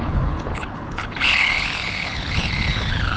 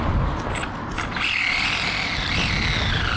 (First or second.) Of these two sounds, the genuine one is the second